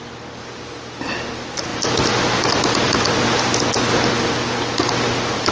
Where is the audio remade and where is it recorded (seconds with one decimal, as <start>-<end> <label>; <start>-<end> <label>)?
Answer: 0.0-5.5 recorded